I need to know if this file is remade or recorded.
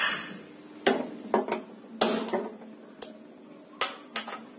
recorded